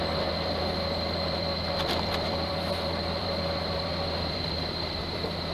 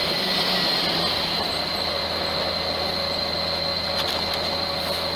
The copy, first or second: first